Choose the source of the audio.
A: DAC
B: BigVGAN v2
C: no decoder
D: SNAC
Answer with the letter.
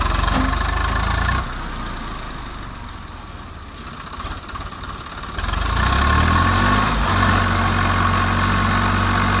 C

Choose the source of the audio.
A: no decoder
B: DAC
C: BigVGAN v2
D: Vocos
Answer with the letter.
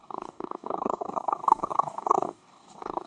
B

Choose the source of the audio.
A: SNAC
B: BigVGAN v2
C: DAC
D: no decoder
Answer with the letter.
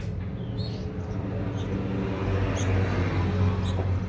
D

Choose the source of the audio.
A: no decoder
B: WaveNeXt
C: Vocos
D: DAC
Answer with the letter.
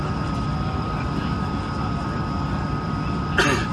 A